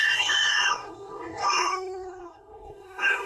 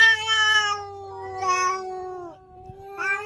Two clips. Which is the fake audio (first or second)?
first